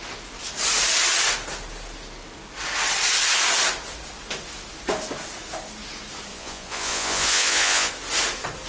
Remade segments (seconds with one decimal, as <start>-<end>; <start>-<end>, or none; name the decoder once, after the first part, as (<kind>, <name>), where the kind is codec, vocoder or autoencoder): 6.3-7.9 (vocoder, Vocos)